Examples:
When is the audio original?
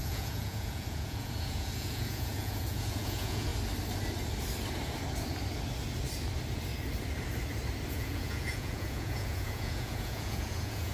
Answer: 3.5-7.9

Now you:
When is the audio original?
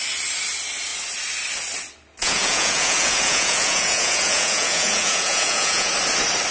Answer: 0.0-2.2; 5.9-6.5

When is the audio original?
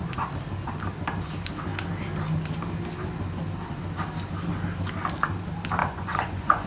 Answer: 0.0-5.8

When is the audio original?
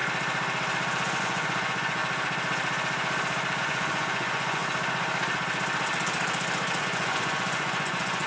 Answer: 0.0-1.2; 2.0-3.6; 4.6-6.8